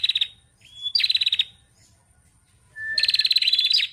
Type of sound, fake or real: real